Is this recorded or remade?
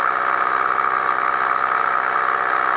recorded